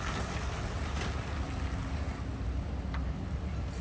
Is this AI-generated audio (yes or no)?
no